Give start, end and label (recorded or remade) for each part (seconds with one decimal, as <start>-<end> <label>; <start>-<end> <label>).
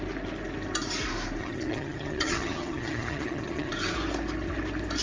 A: 0.0-1.4 recorded; 1.4-3.7 remade; 3.7-5.0 recorded